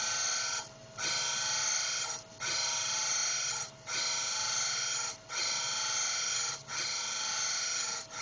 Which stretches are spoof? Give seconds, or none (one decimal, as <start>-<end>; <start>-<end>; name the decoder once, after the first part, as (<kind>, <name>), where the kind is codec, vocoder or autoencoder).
none